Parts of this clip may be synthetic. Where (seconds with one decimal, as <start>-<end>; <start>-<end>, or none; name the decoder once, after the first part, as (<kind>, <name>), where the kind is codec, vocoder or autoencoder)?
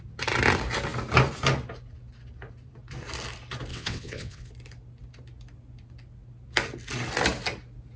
3.7-4.5 (vocoder, WaveNeXt)